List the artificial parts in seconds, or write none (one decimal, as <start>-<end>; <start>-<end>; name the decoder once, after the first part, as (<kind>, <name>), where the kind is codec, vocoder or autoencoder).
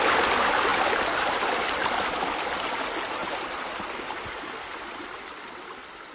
3.2-4.2 (vocoder, BigVGAN v2)